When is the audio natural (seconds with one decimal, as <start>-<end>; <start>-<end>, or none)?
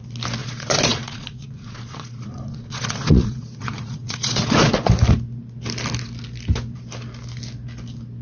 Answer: 0.0-0.4; 4.9-8.2